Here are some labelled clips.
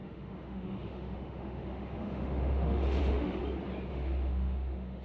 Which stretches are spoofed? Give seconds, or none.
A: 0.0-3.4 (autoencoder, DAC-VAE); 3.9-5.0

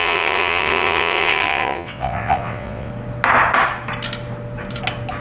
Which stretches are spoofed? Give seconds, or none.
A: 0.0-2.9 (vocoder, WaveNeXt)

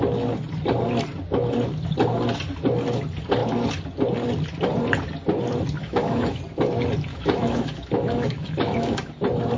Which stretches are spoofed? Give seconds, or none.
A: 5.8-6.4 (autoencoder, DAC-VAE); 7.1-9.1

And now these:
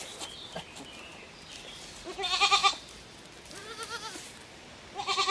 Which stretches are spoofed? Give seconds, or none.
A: 1.1-1.8 (vocoder, BigVGAN v2)